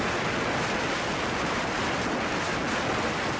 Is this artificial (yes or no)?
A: no